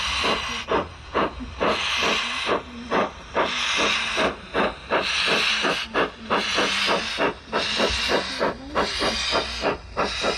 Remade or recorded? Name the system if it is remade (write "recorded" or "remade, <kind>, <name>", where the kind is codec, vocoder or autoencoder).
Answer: recorded